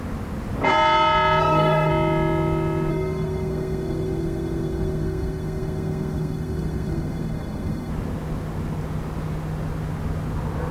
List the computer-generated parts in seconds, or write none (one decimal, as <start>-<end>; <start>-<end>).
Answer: 1.4-1.9; 2.9-7.9